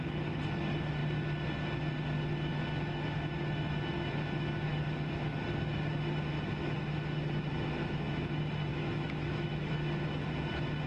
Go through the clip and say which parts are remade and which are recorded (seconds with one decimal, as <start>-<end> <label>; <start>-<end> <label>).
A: 0.0-8.7 recorded; 8.7-9.7 remade; 9.7-10.9 recorded